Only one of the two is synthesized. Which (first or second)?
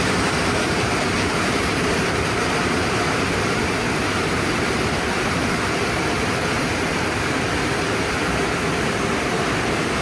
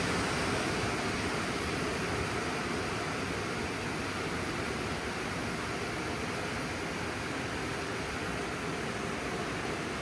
first